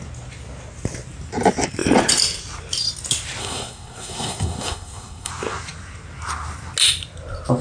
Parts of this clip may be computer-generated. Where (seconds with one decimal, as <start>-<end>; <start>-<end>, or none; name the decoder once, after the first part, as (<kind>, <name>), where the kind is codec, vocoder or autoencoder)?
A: 3.4-5.3 (codec, SNAC)